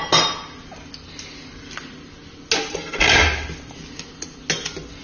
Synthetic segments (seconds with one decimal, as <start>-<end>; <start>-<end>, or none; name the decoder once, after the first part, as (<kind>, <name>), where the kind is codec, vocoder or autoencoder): none